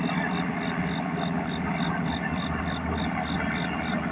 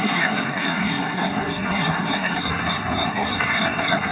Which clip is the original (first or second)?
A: first